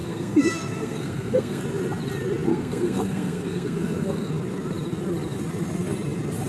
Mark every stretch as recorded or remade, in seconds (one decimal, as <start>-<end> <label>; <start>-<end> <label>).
0.0-1.6 remade; 1.6-2.5 recorded; 2.5-4.3 remade; 4.3-6.5 recorded